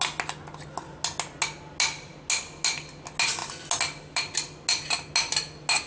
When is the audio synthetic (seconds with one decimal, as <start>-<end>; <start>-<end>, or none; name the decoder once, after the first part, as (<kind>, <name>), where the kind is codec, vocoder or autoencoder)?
none